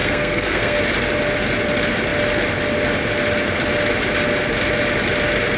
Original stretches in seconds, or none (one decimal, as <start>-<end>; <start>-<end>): 0.8-5.6